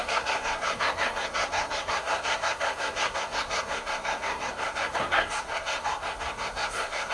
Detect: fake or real fake